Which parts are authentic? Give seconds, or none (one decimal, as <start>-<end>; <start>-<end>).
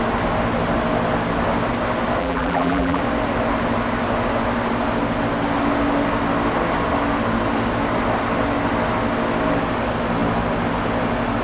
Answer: 0.0-2.2; 3.0-11.4